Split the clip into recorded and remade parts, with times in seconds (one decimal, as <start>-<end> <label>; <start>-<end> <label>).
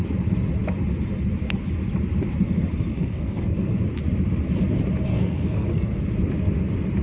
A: 0.0-2.9 recorded; 2.9-3.7 remade; 3.7-5.1 recorded; 5.1-6.0 remade; 6.0-7.0 recorded